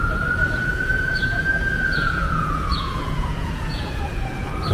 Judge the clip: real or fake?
fake